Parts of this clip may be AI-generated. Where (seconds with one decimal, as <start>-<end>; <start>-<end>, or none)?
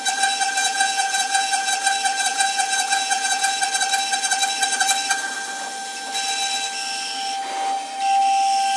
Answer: 0.6-1.7; 2.3-3.6